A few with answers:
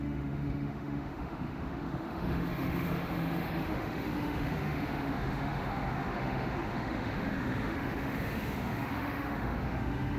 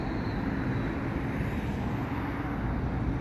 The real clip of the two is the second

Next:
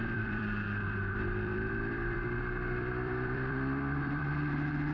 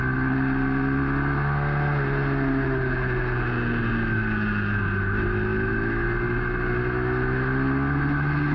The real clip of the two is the second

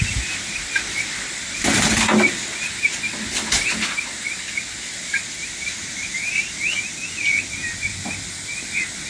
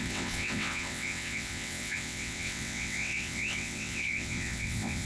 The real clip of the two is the first